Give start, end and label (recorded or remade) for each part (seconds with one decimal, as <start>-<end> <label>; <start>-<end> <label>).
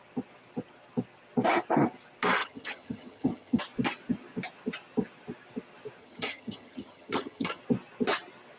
0.0-2.4 recorded; 2.4-3.6 remade; 3.6-6.0 recorded; 6.0-7.6 remade; 7.6-8.6 recorded